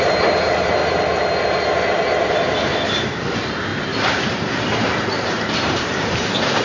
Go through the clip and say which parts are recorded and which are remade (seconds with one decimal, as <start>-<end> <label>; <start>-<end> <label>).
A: 0.0-0.8 remade; 0.8-2.3 recorded; 2.3-6.6 remade